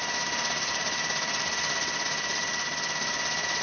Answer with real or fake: real